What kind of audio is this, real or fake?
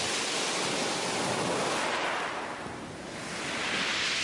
real